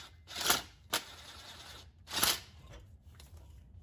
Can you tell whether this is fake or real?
real